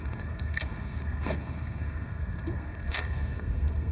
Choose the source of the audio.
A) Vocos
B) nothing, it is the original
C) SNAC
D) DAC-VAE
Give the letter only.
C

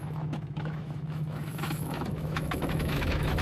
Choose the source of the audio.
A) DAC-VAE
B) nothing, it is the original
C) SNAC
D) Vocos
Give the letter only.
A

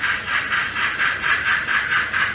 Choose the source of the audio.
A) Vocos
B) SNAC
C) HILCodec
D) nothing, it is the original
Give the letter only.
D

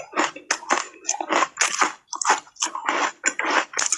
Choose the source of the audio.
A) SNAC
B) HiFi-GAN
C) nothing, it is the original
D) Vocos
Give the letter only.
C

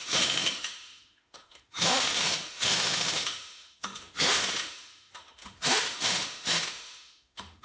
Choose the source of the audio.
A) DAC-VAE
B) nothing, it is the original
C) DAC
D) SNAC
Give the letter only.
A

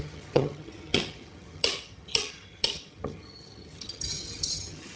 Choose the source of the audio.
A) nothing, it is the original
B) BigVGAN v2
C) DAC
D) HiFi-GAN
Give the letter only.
D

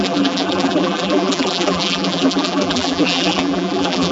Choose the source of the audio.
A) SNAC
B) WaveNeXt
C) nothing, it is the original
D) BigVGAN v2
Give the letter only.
D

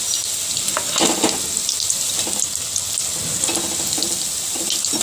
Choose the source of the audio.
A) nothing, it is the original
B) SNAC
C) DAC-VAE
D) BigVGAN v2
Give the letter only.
A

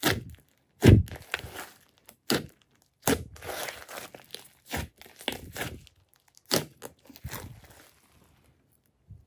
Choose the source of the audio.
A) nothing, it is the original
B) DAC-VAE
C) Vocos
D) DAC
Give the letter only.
A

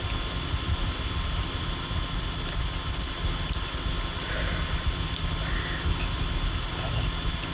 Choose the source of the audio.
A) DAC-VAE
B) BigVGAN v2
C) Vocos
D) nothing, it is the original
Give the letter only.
D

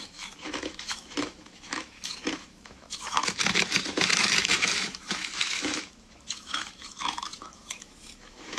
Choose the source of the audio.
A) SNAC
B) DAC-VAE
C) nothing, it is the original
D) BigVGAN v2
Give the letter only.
B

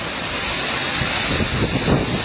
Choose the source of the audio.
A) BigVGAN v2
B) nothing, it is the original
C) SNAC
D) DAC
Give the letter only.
B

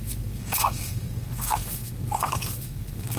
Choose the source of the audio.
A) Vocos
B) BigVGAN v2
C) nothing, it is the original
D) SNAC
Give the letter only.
D